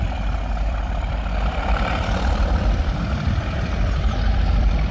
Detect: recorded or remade remade